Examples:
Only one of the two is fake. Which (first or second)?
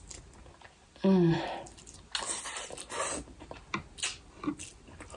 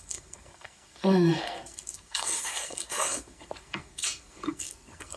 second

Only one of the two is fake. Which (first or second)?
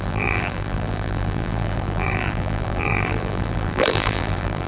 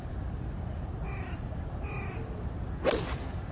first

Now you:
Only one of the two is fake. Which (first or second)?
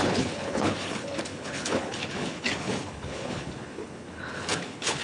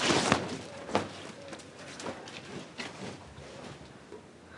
first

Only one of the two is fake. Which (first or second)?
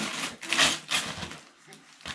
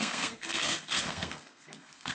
second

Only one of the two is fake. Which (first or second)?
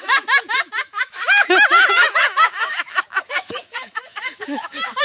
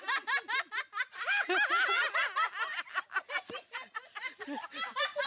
first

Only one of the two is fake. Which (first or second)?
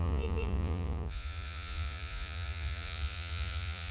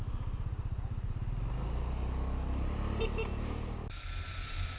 first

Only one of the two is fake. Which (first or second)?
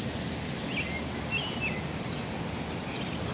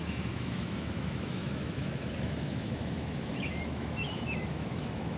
second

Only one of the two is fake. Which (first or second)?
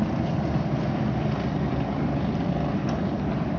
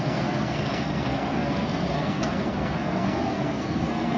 second